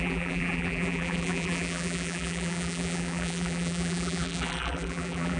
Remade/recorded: remade